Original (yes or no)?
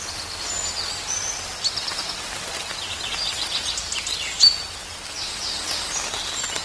yes